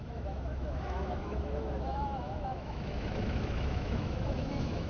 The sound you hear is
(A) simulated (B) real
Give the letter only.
A